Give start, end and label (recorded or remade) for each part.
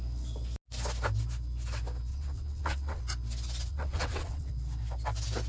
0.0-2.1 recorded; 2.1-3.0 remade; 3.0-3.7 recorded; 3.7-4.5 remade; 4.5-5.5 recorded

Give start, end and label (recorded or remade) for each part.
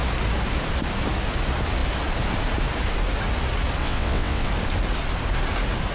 0.0-3.8 recorded; 3.8-4.5 remade; 4.5-5.9 recorded